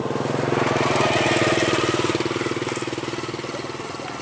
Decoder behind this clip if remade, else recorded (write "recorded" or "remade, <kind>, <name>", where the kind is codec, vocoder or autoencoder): recorded